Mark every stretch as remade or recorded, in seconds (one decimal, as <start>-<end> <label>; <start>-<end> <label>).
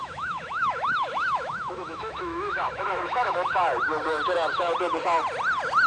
0.0-3.5 remade; 3.5-5.9 recorded